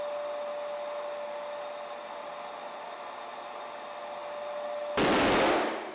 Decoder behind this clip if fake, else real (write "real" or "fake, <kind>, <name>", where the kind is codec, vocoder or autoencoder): real